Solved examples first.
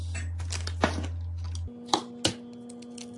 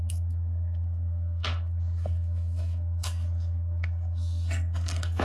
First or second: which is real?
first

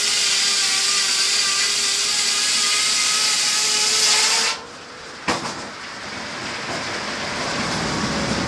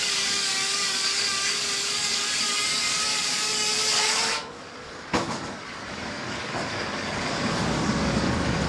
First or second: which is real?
first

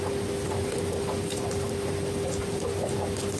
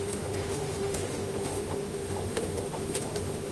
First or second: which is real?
first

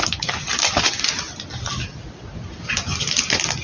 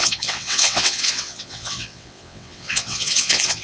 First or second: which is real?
first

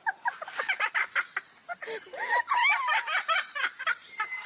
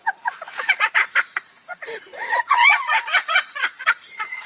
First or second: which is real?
first